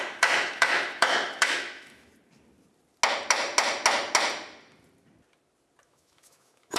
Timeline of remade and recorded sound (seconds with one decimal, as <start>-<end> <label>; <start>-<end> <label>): 0.0-2.1 remade; 2.1-5.8 recorded; 5.8-6.8 remade